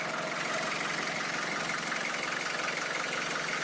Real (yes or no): yes